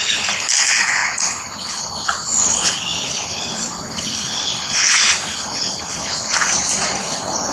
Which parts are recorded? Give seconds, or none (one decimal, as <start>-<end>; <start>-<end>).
6.5-7.0